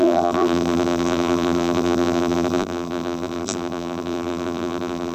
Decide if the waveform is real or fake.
fake